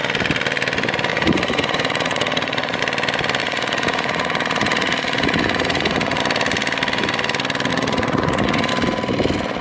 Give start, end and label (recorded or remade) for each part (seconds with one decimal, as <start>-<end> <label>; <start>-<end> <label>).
0.0-1.1 recorded; 1.1-2.8 remade; 2.8-3.4 recorded; 3.4-6.2 remade; 6.2-7.7 recorded; 7.7-8.7 remade; 8.7-9.6 recorded